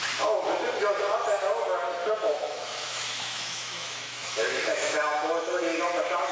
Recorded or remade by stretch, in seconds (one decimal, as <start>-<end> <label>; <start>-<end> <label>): 0.0-2.0 recorded; 2.0-5.8 remade; 5.8-6.3 recorded